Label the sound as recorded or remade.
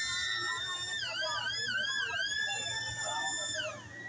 recorded